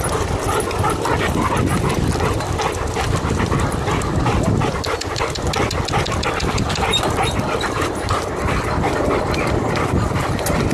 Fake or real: real